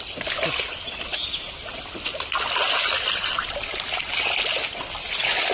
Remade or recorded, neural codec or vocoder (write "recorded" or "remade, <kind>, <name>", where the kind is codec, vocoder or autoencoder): recorded